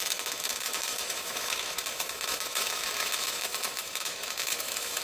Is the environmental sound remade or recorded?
remade